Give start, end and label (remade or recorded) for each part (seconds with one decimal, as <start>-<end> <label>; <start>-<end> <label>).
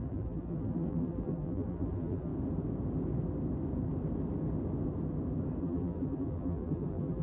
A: 0.0-2.3 remade; 2.3-5.6 recorded; 5.6-7.2 remade